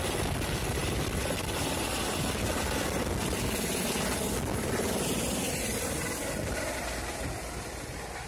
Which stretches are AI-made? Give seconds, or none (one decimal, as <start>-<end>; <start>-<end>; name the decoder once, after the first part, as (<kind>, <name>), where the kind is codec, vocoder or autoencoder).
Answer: none